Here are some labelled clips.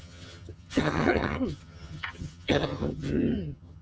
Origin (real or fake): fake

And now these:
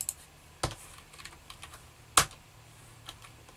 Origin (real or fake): real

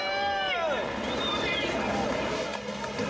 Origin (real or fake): real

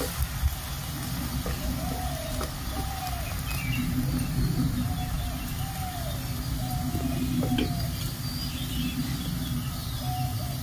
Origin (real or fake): real